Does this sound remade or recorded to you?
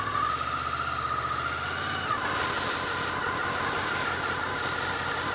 recorded